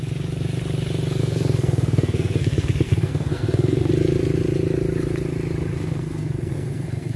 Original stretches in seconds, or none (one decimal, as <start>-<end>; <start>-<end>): 0.0-1.2; 3.9-5.7